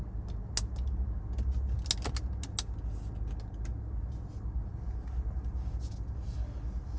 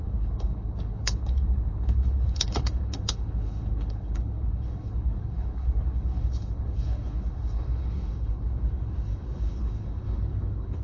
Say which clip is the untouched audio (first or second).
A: first